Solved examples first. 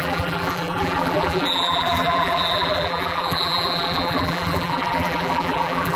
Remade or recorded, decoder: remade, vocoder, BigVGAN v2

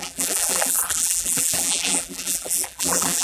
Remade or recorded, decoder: remade, vocoder, BigVGAN v2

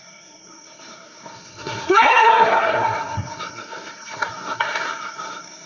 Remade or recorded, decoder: remade, codec, SNAC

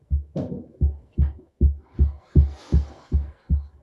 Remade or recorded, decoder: remade, codec, SNAC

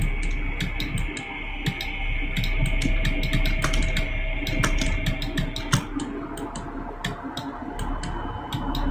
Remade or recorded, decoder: recorded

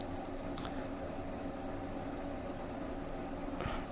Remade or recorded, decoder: recorded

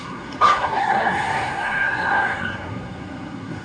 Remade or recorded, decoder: remade, codec, SNAC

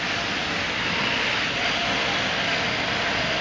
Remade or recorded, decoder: recorded